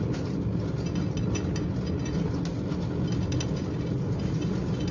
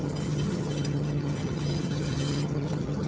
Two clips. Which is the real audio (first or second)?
first